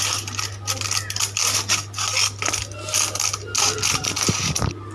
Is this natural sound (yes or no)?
yes